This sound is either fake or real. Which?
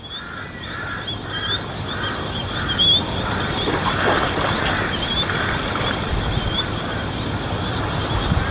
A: real